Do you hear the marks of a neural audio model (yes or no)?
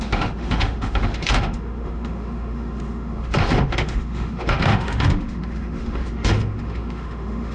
yes